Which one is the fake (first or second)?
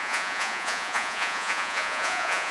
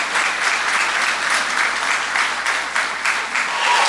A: first